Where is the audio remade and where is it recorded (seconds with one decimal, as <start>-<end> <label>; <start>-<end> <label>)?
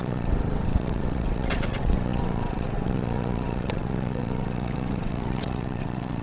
0.0-6.2 remade